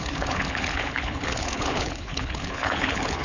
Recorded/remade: remade